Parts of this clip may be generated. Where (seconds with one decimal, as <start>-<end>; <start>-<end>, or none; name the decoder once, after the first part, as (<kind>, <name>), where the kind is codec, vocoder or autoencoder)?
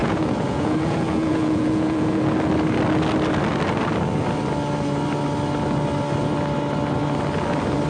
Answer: 0.0-2.2 (vocoder, Vocos)